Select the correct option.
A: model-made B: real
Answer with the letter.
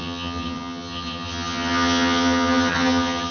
A